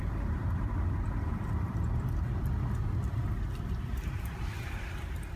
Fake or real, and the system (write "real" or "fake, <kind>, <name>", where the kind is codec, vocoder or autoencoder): fake, vocoder, BigVGAN v2